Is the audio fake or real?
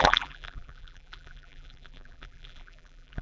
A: fake